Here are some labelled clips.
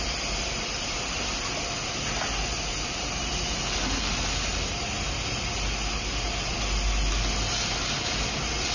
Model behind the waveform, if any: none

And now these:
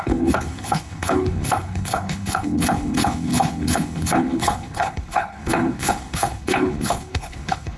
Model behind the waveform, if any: codec, HILCodec